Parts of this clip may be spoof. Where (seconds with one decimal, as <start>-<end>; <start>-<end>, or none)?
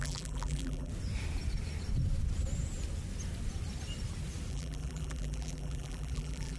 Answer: 0.0-0.9; 4.5-6.6